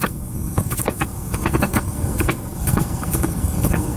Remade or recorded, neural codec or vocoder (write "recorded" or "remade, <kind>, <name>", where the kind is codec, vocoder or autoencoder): remade, codec, SNAC